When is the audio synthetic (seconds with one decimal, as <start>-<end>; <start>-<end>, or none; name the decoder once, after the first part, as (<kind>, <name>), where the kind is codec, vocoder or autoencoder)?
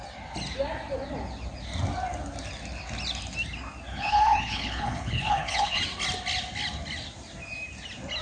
3.9-5.8 (codec, HILCodec)